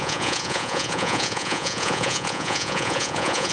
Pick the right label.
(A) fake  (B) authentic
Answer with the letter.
A